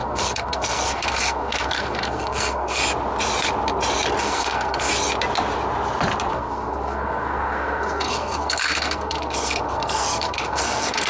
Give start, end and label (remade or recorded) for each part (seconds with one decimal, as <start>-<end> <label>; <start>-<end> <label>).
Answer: 0.0-2.8 remade; 2.8-4.2 recorded; 4.2-4.9 remade; 4.9-6.3 recorded; 6.3-11.1 remade